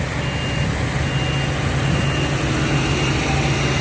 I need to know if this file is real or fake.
real